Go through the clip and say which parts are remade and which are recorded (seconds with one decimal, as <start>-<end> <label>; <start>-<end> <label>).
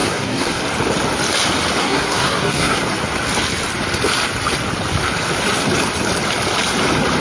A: 0.0-0.6 remade; 0.6-1.8 recorded; 1.8-2.8 remade; 2.8-7.2 recorded